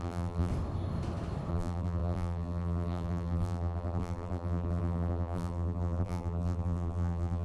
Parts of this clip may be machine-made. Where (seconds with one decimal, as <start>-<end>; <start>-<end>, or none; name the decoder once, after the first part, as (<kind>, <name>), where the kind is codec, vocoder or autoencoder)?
0.0-0.5 (vocoder, BigVGAN v2); 1.5-7.4